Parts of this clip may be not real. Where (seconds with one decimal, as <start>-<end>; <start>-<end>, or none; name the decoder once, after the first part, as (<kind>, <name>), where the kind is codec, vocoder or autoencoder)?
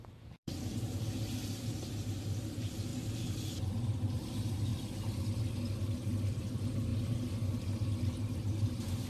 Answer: 0.0-2.9 (vocoder, BigVGAN v2); 4.1-4.7; 6.3-6.9; 8.2-9.1